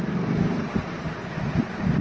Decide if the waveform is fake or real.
real